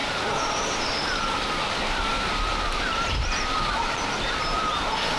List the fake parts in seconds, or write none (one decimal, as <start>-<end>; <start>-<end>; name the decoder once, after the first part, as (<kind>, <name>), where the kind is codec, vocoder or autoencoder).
0.0-0.9 (vocoder, BigVGAN v2); 2.5-4.7